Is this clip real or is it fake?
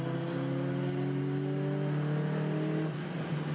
real